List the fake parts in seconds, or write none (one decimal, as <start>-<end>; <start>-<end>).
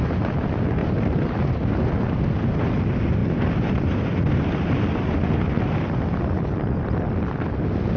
0.8-2.3; 3.2-7.2